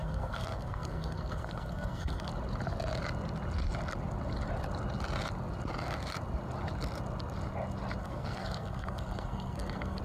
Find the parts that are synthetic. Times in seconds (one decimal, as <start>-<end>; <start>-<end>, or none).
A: 0.0-2.3; 8.0-10.0